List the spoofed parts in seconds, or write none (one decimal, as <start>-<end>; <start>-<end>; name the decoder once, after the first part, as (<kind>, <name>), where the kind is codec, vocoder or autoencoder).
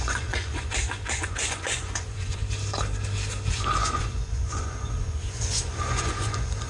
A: 0.0-2.4 (vocoder, Vocos); 3.5-6.7